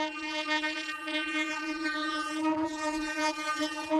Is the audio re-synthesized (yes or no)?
yes